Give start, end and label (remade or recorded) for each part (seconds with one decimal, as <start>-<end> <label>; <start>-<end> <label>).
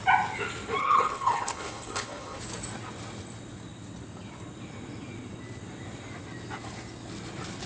0.0-0.8 recorded; 0.8-2.4 remade; 2.4-7.7 recorded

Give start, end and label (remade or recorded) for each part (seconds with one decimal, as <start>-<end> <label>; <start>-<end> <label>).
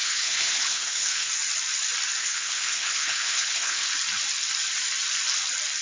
0.0-1.3 remade; 1.3-2.2 recorded; 2.2-3.9 remade; 3.9-5.8 recorded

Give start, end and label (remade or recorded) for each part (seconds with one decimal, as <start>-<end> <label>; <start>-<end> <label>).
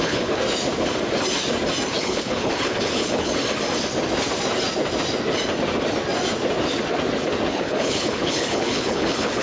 0.0-0.4 remade; 0.4-2.0 recorded; 2.0-3.3 remade; 3.3-7.5 recorded; 7.5-9.4 remade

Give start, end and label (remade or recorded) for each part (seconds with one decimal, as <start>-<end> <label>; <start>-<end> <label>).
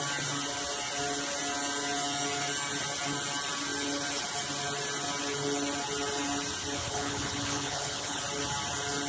0.0-6.8 recorded; 6.8-8.2 remade; 8.2-9.1 recorded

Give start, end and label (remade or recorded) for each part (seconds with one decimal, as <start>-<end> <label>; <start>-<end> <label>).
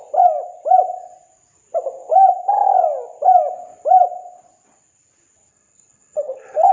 0.0-5.5 recorded; 5.5-6.7 remade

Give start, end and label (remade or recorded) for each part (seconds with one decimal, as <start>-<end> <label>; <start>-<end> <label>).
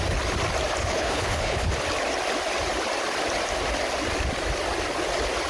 0.0-0.8 recorded; 0.8-1.7 remade; 1.7-5.5 recorded